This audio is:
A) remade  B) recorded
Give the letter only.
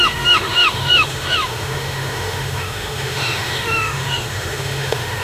A